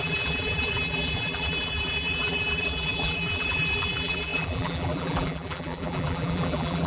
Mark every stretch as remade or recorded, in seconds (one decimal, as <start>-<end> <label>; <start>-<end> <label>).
0.0-6.9 remade